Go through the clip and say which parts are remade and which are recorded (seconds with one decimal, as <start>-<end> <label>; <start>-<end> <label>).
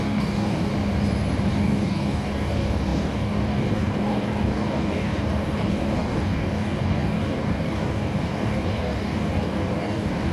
0.0-0.7 remade; 0.7-1.5 recorded; 1.5-10.3 remade